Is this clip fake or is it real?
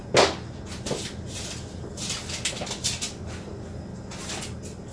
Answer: real